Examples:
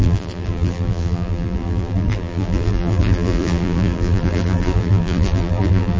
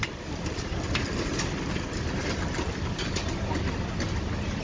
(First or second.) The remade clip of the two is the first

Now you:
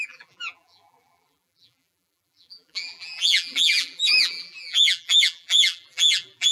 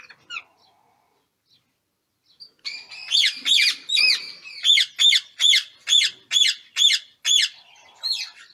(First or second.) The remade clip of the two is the first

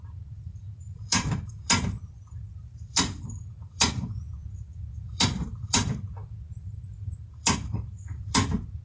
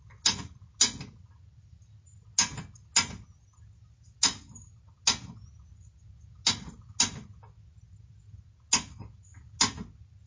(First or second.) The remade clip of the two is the first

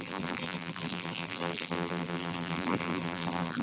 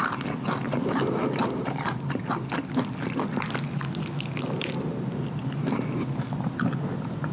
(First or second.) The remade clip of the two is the first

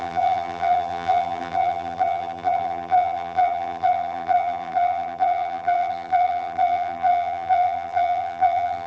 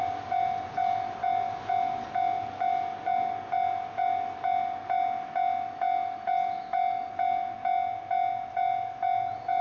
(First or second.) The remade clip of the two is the first